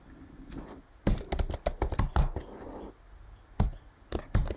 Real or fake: real